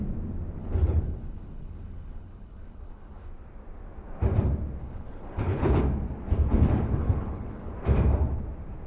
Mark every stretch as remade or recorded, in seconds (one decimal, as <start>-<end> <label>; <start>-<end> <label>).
0.0-0.6 recorded; 0.6-3.3 remade; 3.3-4.8 recorded; 4.8-5.8 remade; 5.8-7.0 recorded; 7.0-7.7 remade; 7.7-8.9 recorded